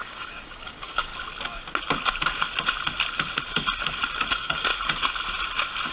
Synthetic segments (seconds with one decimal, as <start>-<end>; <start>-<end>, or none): 0.0-1.1; 4.3-4.7